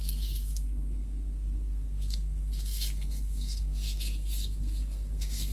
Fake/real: fake